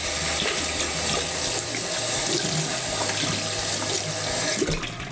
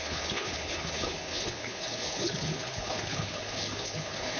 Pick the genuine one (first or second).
first